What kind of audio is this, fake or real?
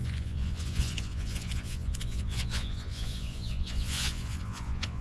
fake